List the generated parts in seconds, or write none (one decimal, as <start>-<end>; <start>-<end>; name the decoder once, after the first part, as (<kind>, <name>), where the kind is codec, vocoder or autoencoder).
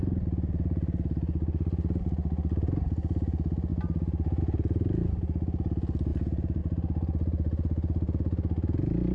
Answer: 3.7-4.4 (vocoder, BigVGAN v2); 6.1-6.6